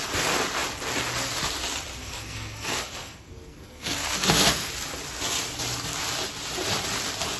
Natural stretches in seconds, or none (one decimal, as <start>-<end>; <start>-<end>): 0.0-2.0; 4.7-7.4